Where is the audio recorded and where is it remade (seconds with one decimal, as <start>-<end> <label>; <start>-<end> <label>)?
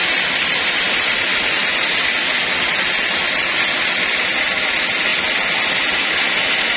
0.0-6.8 recorded